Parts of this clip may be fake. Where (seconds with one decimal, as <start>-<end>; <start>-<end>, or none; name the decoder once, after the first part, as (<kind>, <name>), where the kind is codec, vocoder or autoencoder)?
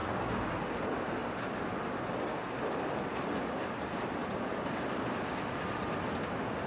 none